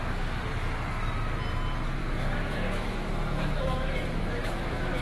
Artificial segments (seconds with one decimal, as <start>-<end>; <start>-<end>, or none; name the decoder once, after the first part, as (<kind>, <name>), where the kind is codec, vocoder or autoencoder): 2.0-5.0 (autoencoder, DAC-VAE)